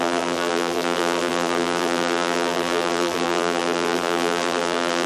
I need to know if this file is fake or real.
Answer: fake